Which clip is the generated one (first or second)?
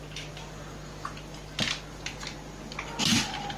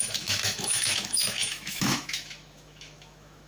second